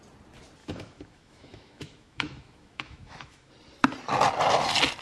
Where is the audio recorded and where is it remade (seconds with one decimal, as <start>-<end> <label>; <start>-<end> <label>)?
0.0-0.6 recorded; 0.6-3.5 remade; 3.5-5.0 recorded